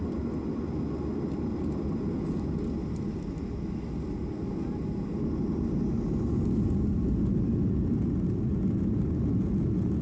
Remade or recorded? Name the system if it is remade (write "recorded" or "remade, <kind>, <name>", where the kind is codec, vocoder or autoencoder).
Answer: recorded